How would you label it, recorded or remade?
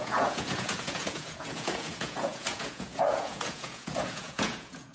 remade